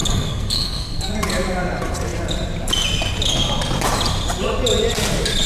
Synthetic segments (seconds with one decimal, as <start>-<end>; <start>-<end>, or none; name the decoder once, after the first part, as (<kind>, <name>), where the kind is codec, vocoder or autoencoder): 0.0-1.1 (codec, SNAC)